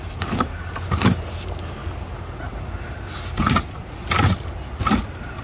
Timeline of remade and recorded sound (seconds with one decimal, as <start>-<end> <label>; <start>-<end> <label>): 0.0-1.8 remade; 1.8-5.0 recorded; 5.0-5.4 remade